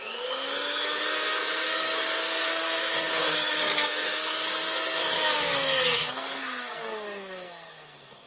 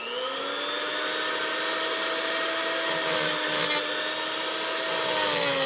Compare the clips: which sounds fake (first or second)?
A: first